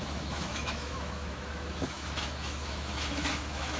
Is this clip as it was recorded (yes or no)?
no